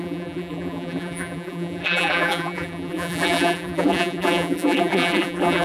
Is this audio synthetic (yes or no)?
yes